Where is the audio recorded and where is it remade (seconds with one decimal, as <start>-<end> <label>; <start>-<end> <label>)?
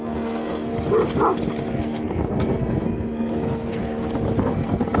0.0-0.7 remade; 0.7-1.8 recorded; 1.8-3.8 remade; 3.8-4.4 recorded; 4.4-5.0 remade